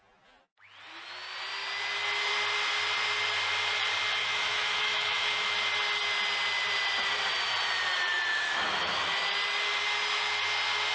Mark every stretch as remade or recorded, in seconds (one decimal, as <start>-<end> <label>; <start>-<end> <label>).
0.0-4.2 recorded; 4.2-5.5 remade; 5.5-8.3 recorded; 8.3-9.0 remade; 9.0-10.9 recorded